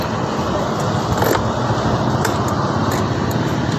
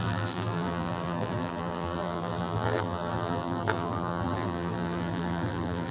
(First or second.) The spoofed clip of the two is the second